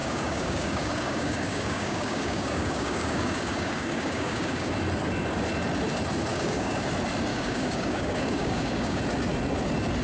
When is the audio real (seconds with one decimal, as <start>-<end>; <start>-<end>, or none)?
4.7-6.3; 6.8-7.3; 9.0-10.0